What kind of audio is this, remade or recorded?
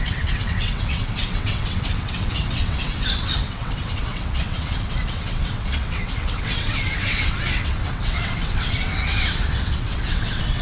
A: remade